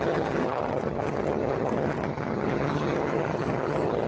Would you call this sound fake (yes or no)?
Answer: yes